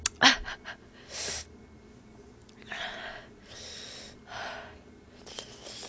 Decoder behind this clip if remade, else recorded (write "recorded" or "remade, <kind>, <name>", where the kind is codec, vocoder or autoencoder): recorded